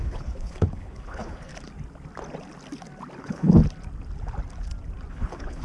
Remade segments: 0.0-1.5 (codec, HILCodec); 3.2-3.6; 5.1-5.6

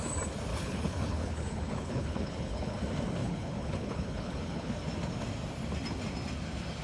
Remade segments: 0.5-2.8 (codec, HILCodec); 3.2-4.7

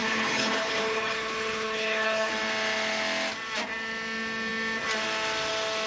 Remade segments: 0.0-2.3 (codec, HILCodec)

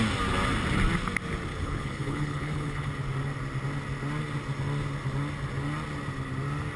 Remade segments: 1.5-2.9 (codec, HILCodec)